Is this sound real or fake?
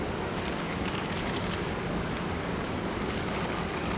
fake